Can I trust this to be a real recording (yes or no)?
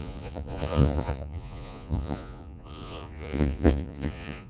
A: no